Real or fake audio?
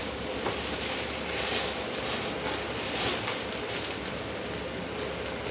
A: real